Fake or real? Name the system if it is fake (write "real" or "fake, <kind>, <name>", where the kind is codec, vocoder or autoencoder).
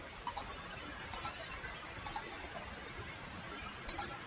real